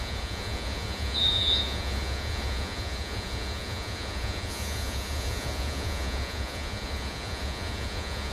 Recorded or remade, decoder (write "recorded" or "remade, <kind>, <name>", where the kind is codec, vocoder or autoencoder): remade, vocoder, Vocos